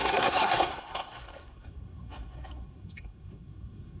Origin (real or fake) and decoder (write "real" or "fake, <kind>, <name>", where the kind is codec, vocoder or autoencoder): fake, codec, SNAC